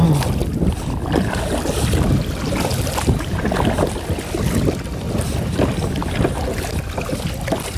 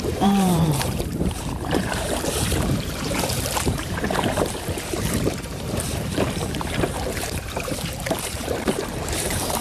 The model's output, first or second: second